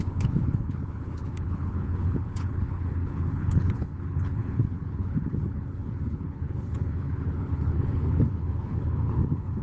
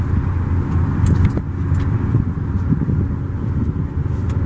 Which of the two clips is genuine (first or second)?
second